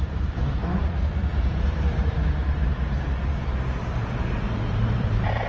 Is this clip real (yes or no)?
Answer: no